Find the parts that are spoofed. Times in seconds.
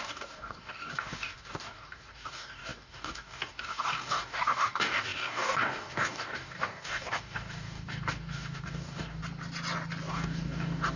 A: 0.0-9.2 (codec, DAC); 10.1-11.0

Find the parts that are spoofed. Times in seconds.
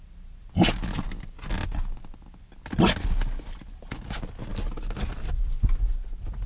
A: none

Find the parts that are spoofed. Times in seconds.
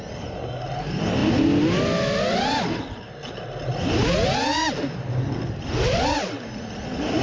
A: none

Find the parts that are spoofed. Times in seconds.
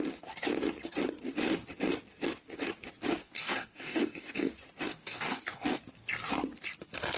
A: 3.2-4.5 (codec, DAC); 4.9-5.8